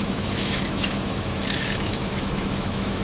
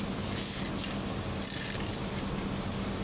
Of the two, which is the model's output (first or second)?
first